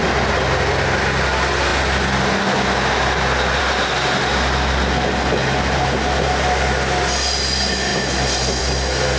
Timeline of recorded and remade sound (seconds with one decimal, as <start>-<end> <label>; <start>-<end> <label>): 0.0-9.2 recorded